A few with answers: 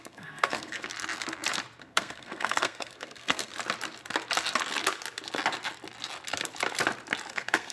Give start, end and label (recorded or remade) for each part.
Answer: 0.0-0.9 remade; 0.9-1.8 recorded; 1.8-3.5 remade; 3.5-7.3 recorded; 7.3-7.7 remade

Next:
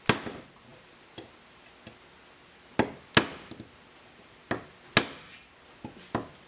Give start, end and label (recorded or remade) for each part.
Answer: 0.0-6.5 recorded

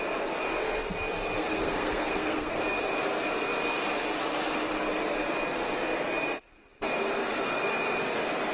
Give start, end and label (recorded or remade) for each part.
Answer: 0.0-1.4 recorded; 1.4-2.6 remade; 2.6-8.5 recorded

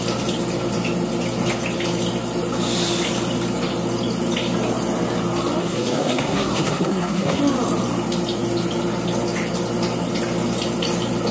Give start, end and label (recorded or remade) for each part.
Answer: 0.0-5.6 recorded; 5.6-7.4 remade; 7.4-11.3 recorded

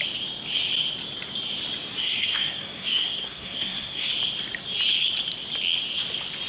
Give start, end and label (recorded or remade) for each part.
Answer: 0.0-2.0 recorded; 2.0-4.1 remade; 4.1-6.5 recorded

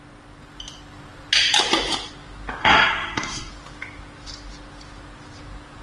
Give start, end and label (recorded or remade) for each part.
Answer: 0.0-2.6 recorded; 2.6-3.5 remade; 3.5-5.8 recorded

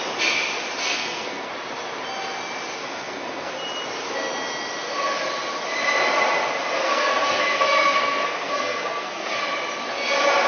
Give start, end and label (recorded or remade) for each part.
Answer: 0.0-0.8 recorded; 0.8-1.5 remade; 1.5-2.8 recorded; 2.8-3.5 remade; 3.5-6.8 recorded; 6.8-9.4 remade; 9.4-10.5 recorded

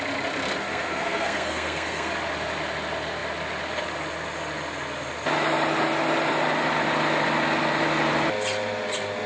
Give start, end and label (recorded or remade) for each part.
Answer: 0.0-0.6 recorded; 0.6-2.1 remade; 2.1-9.3 recorded